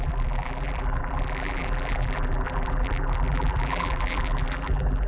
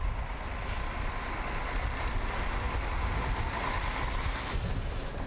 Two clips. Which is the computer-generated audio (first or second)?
first